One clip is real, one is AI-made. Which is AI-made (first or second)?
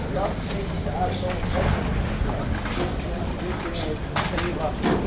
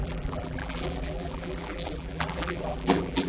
second